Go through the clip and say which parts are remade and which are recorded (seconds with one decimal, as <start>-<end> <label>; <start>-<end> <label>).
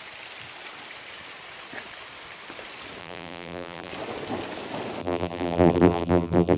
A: 0.0-3.0 recorded; 3.0-3.9 remade; 3.9-5.0 recorded; 5.0-6.6 remade